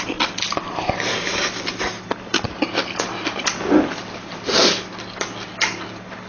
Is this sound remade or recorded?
recorded